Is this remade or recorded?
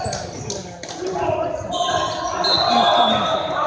recorded